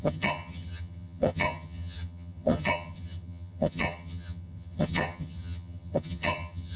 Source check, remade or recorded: remade